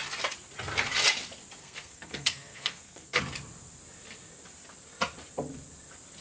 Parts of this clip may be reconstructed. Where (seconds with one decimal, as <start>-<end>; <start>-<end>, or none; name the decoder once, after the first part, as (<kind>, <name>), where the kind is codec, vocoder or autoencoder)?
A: 1.6-3.2 (codec, SNAC)